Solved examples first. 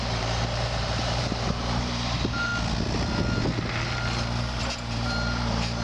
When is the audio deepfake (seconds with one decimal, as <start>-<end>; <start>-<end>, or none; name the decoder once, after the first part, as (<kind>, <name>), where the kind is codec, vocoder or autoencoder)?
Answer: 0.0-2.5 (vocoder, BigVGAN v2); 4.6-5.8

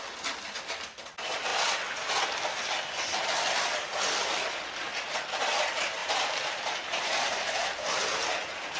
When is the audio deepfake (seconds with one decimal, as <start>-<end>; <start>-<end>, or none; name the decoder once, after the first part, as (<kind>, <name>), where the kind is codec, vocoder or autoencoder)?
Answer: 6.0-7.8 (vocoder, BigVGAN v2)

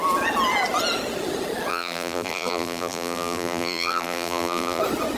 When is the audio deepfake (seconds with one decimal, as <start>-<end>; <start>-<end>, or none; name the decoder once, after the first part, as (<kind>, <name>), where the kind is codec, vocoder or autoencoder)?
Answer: 1.7-4.8 (vocoder, BigVGAN v2)

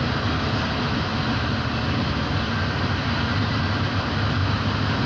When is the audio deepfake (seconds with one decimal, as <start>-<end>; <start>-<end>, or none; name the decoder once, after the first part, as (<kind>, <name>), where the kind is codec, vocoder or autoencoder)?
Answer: 0.0-1.1 (vocoder, BigVGAN v2); 3.3-4.4

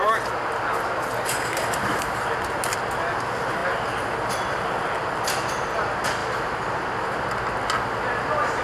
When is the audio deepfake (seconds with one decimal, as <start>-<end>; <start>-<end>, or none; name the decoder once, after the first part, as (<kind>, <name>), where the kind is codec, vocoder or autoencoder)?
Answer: 6.2-6.8 (vocoder, BigVGAN v2)